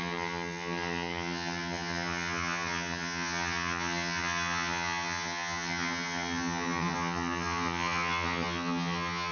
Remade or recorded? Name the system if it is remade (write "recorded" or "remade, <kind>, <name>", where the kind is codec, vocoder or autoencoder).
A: remade, vocoder, HiFi-GAN